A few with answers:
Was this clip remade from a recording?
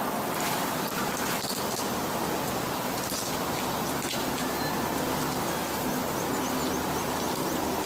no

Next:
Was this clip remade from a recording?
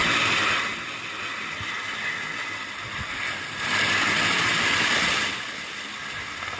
no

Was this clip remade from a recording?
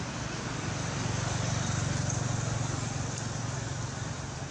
no